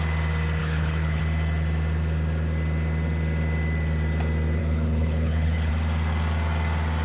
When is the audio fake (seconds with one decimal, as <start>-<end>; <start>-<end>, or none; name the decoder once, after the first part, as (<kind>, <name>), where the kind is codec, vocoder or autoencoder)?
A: 0.6-1.2 (codec, HILCodec); 4.6-5.7